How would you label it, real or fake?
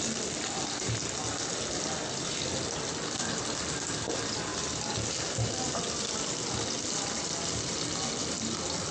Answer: real